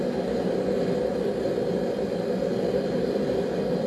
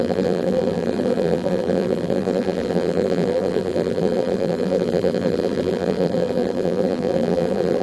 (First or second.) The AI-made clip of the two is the second